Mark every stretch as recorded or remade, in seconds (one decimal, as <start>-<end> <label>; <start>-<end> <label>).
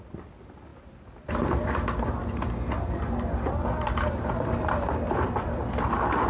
0.0-6.3 recorded